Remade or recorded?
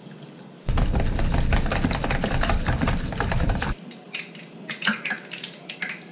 recorded